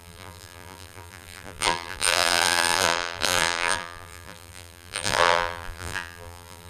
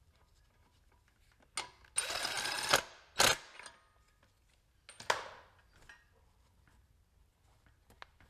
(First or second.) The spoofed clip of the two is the first